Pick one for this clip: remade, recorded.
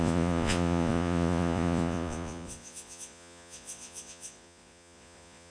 remade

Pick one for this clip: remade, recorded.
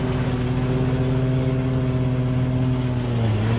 recorded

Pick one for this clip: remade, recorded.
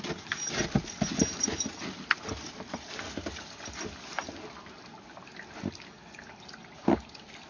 recorded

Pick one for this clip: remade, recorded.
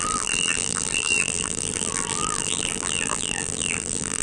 remade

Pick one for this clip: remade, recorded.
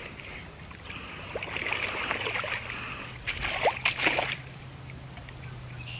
recorded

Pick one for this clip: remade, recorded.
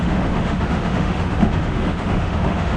remade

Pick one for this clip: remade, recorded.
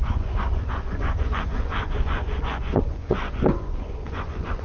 remade